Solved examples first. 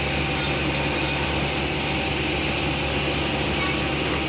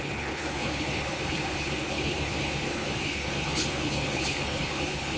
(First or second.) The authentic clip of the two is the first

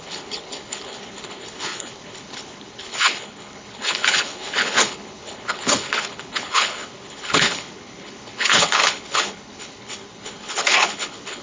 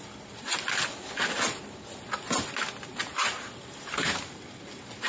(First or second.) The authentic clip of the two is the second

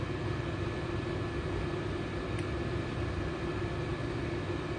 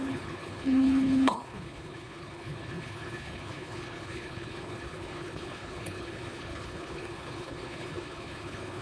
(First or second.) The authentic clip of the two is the first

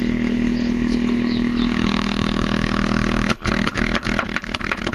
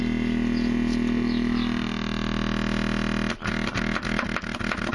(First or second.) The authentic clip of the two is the second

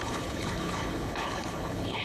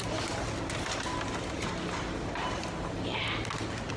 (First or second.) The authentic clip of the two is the second